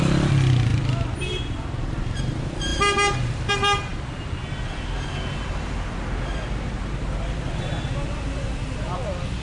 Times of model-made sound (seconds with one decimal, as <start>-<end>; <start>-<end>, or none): none